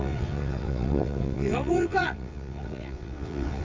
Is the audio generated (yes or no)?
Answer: yes